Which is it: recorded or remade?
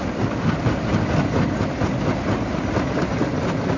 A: recorded